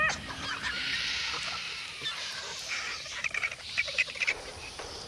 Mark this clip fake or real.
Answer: fake